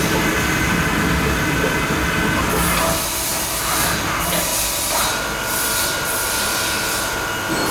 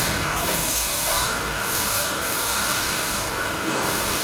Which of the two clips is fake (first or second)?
second